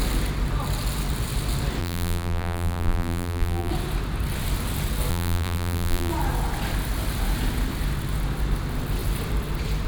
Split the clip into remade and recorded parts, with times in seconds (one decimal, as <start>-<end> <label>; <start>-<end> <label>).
0.0-1.8 recorded; 1.8-3.7 remade; 3.7-5.1 recorded; 5.1-6.1 remade; 6.1-9.9 recorded